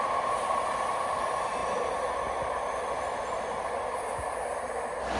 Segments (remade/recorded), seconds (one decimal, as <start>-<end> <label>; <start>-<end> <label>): 0.0-5.2 recorded